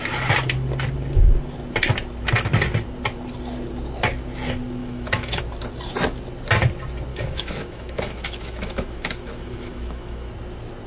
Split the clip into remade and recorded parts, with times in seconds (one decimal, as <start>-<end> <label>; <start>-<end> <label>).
0.0-4.8 recorded; 4.8-5.4 remade; 5.4-7.1 recorded; 7.1-10.3 remade; 10.3-10.9 recorded